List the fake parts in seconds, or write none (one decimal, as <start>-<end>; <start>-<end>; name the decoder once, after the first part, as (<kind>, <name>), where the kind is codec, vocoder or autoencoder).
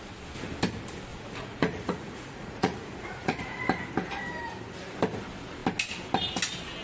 1.1-3.6 (vocoder, Vocos)